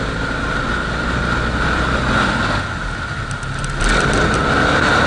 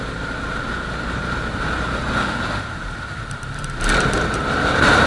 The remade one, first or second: second